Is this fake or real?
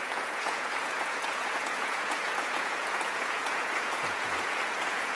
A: fake